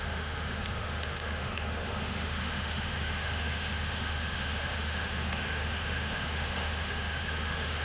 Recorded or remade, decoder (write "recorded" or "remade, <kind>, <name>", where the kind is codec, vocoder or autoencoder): remade, autoencoder, DAC-VAE